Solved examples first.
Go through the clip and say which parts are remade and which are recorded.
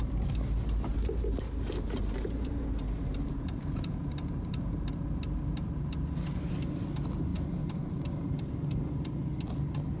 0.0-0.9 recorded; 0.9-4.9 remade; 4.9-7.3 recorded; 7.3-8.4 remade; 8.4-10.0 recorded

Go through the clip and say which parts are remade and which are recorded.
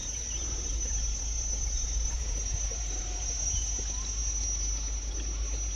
0.0-3.5 remade; 3.5-5.8 recorded